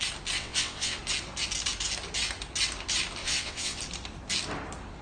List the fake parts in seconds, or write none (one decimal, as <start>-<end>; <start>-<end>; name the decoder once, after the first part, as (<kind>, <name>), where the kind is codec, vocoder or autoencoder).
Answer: 0.4-1.0 (vocoder, WaveNeXt); 3.2-3.8